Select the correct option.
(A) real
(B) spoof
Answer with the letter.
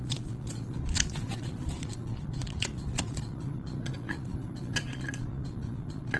B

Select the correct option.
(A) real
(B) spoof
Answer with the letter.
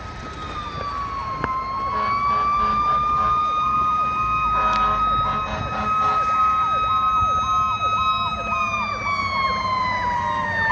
A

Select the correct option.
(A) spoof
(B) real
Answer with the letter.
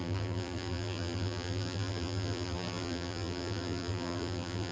A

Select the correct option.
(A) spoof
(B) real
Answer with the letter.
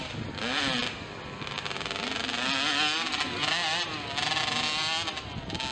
B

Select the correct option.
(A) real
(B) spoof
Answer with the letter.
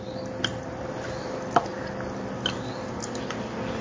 A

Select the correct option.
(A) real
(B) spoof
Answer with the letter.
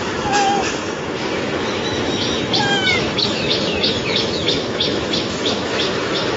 B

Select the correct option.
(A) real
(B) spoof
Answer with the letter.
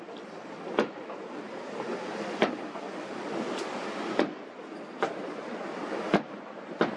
B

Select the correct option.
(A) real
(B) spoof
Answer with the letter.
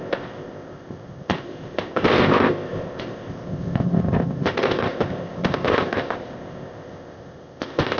B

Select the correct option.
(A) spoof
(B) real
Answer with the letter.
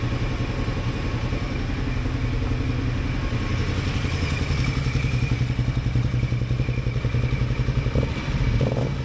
B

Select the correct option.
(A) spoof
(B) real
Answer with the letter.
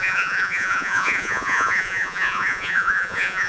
A